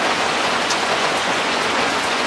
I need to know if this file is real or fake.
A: fake